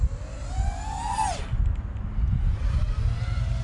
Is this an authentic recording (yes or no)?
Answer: yes